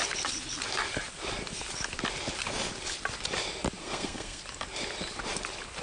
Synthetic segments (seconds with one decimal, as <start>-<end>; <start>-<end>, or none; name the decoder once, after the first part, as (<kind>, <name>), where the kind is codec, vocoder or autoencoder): 3.8-4.4 (codec, SNAC)